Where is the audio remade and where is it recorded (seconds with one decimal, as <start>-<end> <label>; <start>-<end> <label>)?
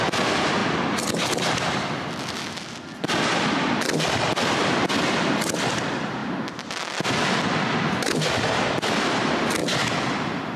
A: 0.0-10.6 recorded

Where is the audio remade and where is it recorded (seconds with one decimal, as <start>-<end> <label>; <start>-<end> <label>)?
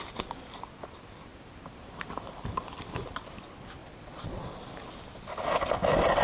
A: 0.0-3.8 recorded; 3.8-4.6 remade; 4.6-6.2 recorded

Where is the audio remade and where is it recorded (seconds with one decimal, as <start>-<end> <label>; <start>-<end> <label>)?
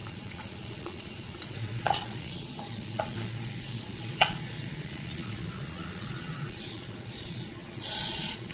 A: 0.0-8.5 remade